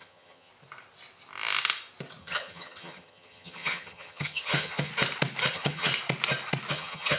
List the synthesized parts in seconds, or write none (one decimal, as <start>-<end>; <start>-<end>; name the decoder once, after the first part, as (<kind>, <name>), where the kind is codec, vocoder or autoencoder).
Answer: 0.0-0.5 (vocoder, HiFi-GAN); 2.2-4.9; 5.5-5.9; 6.7-7.2